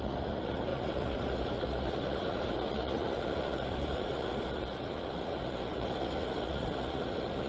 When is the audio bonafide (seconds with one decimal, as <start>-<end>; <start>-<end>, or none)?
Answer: none